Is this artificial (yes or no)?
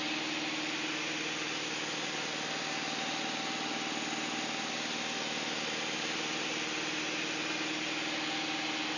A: no